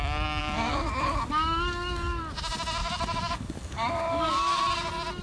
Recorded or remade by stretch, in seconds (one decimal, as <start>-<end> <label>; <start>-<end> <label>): 0.0-0.4 recorded; 0.4-2.2 remade; 2.2-2.8 recorded; 2.8-4.6 remade; 4.6-5.2 recorded